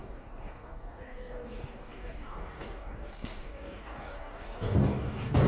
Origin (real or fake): fake